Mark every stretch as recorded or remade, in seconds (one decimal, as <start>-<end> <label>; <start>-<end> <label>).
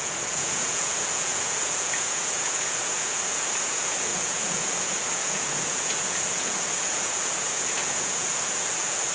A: 0.0-9.1 remade